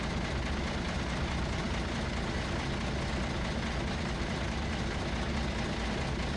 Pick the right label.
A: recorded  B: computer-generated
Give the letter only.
A